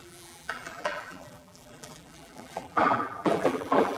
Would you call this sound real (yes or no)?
no